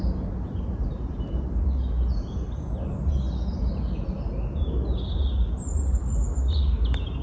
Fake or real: real